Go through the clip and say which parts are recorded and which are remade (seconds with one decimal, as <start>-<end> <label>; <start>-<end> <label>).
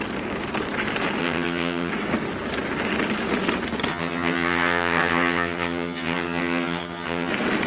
0.0-1.2 recorded; 1.2-1.9 remade; 1.9-3.9 recorded; 3.9-7.3 remade; 7.3-7.7 recorded